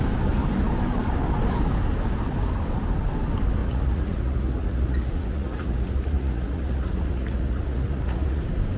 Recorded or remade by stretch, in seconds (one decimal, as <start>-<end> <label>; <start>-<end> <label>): 0.0-3.6 recorded; 3.6-8.4 remade; 8.4-8.8 recorded